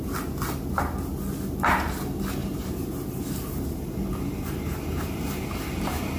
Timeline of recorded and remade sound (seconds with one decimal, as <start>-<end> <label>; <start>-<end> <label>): 0.0-2.4 recorded; 2.4-6.2 remade